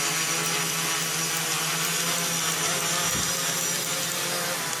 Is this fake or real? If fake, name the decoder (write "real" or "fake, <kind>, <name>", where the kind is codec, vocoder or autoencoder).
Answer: real